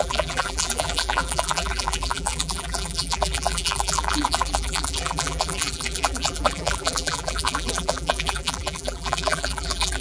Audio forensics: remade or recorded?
remade